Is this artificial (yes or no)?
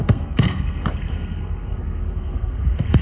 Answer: yes